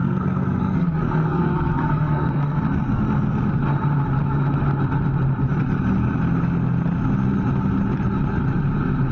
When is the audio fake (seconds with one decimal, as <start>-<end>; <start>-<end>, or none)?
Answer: 0.0-3.0